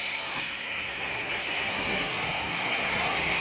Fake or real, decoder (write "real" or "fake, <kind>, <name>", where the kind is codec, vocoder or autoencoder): fake, codec, SNAC